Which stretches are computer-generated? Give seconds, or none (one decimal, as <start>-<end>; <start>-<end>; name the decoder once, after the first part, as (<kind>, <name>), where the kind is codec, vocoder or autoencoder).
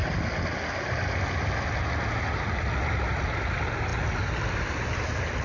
none